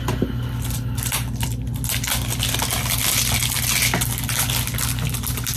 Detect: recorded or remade recorded